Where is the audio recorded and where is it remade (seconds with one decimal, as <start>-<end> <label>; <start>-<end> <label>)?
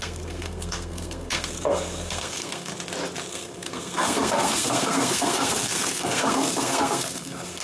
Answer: 0.0-2.7 remade; 2.7-3.3 recorded; 3.3-7.6 remade